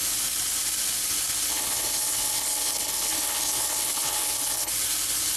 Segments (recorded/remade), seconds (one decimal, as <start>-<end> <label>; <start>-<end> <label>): 0.0-1.5 recorded; 1.5-4.7 remade; 4.7-5.4 recorded